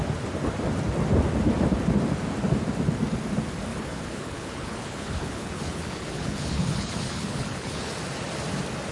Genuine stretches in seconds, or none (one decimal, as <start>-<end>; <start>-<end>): 0.0-3.7; 7.9-8.9